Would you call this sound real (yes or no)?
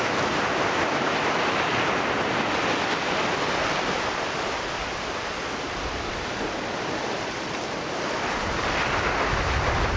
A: yes